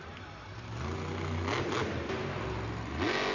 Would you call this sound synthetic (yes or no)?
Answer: no